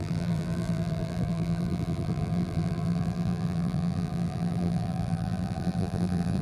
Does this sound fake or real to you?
fake